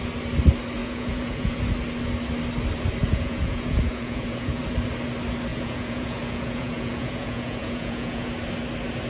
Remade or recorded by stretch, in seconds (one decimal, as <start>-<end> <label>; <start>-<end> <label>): 0.0-0.8 recorded; 0.8-1.6 remade; 1.6-3.0 recorded; 3.0-4.6 remade; 4.6-5.5 recorded; 5.5-8.3 remade; 8.3-9.1 recorded